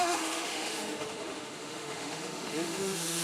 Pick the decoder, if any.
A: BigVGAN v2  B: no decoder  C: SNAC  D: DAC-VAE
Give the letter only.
D